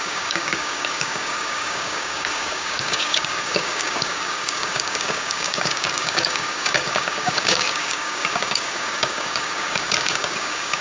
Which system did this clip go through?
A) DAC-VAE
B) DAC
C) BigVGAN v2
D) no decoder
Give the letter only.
B